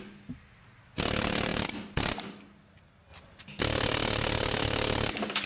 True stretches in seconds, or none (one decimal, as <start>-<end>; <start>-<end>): 0.0-5.5